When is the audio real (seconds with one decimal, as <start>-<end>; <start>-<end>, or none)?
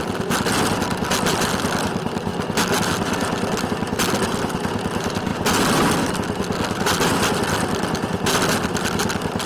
0.0-9.5